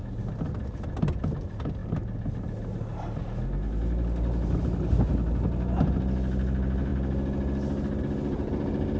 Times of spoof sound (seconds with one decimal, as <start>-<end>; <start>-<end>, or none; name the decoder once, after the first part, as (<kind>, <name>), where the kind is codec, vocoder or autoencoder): none